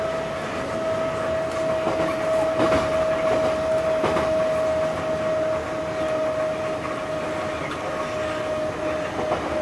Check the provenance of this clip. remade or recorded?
recorded